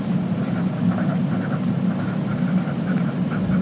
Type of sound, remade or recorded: recorded